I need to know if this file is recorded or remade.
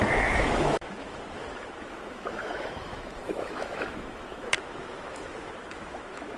remade